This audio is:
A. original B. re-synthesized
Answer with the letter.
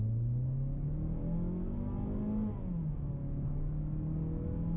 A